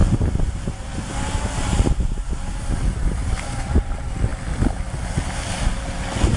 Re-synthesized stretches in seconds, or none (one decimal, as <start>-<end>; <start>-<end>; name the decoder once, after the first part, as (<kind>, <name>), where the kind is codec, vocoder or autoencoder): 0.0-1.1 (vocoder, BigVGAN v2); 1.7-2.4; 3.2-3.9

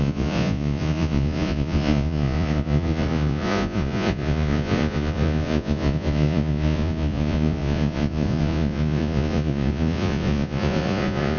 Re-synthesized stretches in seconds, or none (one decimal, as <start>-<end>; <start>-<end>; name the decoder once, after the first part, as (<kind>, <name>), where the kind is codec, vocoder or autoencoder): 0.0-11.4 (vocoder, Vocos)